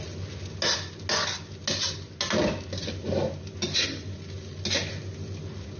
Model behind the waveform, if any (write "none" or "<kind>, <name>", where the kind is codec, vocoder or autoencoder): none